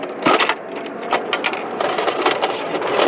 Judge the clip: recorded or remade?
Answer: recorded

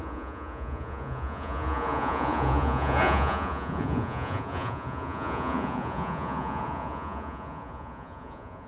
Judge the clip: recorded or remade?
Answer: remade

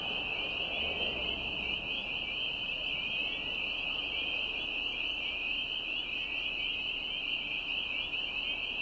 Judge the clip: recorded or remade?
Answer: recorded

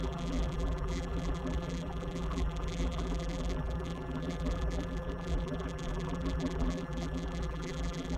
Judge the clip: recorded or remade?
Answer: remade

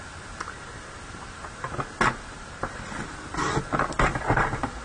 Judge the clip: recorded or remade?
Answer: recorded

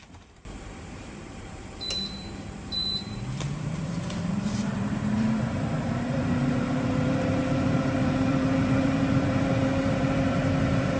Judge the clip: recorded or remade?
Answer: remade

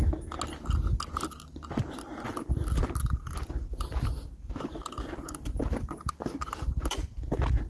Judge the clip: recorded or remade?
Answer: recorded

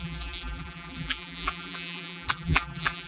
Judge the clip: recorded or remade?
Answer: remade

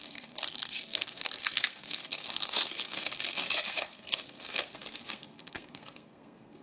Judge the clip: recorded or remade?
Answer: remade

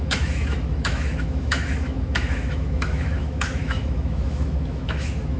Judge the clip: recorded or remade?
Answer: remade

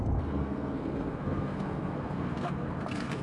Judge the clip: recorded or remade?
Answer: remade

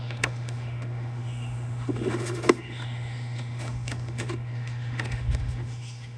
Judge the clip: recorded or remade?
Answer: remade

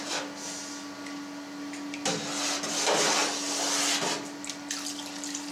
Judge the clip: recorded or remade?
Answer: recorded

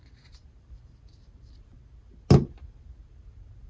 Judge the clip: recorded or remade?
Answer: recorded